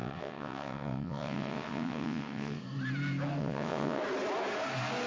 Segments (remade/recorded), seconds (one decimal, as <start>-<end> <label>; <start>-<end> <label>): 0.0-2.6 remade; 2.6-3.4 recorded; 3.4-4.0 remade; 4.0-5.1 recorded